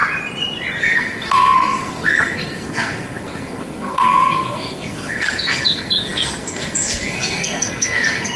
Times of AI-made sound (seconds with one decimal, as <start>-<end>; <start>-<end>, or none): 0.8-8.4